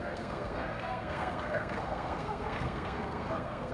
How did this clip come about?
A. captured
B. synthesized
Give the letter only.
B